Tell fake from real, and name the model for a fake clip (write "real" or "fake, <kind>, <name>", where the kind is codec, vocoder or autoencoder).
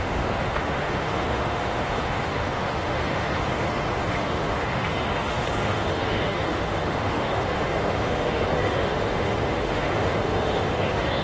fake, autoencoder, DAC-VAE